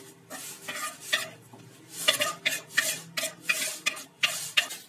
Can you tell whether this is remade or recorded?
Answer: recorded